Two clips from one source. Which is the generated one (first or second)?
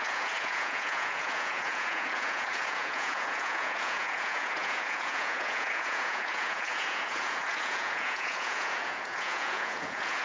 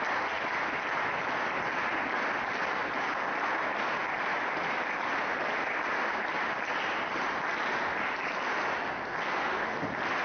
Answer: first